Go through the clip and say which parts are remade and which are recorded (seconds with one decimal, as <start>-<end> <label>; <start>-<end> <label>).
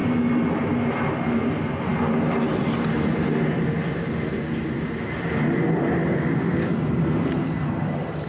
0.0-8.3 recorded